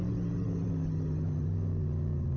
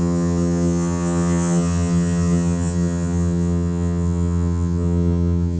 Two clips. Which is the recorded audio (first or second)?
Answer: first